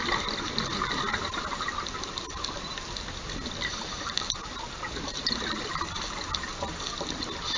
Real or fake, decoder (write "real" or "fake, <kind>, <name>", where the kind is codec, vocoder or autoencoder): real